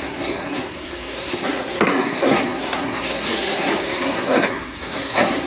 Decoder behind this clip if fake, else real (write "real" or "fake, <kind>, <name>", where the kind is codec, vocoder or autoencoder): fake, codec, SNAC